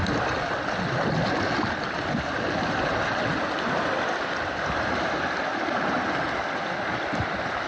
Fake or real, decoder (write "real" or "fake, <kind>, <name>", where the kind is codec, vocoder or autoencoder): real